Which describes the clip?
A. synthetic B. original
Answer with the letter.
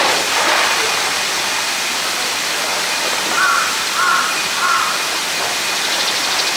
B